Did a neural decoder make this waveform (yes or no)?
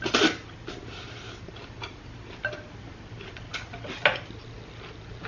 no